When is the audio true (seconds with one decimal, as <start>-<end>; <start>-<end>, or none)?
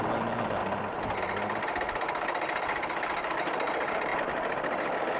0.0-5.2